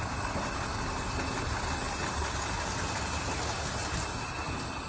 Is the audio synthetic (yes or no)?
no